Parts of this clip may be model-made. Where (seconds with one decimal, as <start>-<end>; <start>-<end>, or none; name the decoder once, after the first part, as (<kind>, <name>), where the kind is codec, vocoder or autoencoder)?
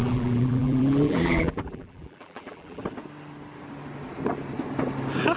0.0-2.8 (vocoder, BigVGAN v2)